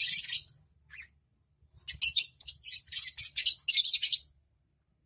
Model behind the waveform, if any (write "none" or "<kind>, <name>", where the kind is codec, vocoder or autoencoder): none